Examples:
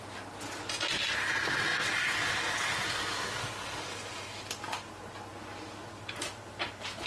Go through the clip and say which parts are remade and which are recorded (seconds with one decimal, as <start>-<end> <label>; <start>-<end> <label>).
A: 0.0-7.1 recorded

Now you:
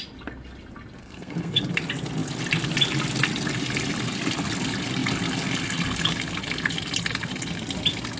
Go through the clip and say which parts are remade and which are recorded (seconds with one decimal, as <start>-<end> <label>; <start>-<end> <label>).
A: 0.0-1.0 recorded; 1.0-1.6 remade; 1.6-8.2 recorded

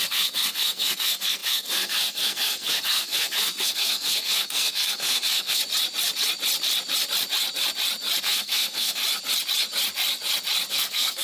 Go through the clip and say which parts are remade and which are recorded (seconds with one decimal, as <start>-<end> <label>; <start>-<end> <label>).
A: 0.0-5.6 remade; 5.6-8.2 recorded; 8.2-9.0 remade; 9.0-10.7 recorded; 10.7-11.2 remade

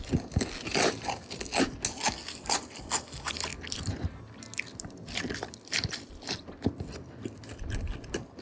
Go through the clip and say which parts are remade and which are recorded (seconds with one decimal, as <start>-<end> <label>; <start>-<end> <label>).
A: 0.0-8.4 recorded